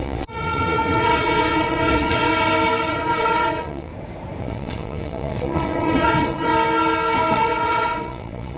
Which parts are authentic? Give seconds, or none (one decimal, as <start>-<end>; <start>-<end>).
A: 2.3-2.9; 3.9-4.4; 6.5-7.3